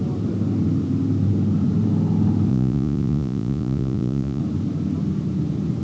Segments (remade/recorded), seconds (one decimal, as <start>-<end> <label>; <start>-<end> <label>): 0.0-2.5 recorded; 2.5-4.4 remade; 4.4-5.8 recorded